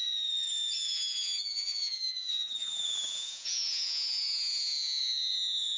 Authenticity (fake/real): fake